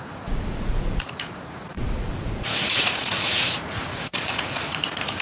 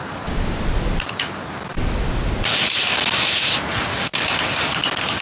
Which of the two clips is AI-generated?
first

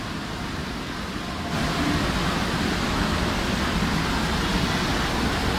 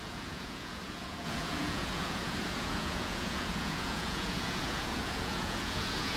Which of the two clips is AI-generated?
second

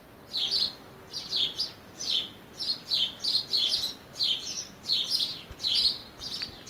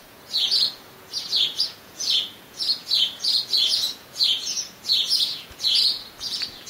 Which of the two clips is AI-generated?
second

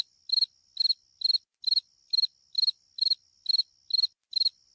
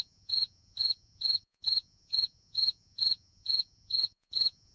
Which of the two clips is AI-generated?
second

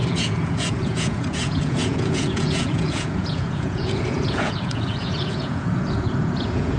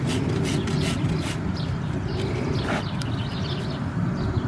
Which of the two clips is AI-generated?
first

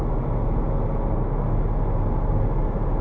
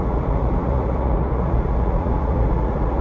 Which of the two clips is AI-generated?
second